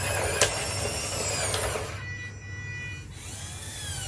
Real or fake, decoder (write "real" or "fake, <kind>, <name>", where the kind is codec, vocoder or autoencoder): real